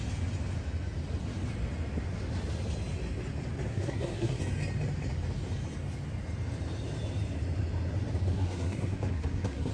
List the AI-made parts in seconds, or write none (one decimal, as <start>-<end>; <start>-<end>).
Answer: 3.7-4.4; 8.3-9.7